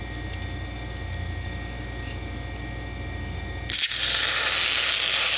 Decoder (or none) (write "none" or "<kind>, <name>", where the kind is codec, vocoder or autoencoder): none